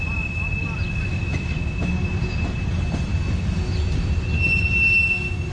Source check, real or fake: real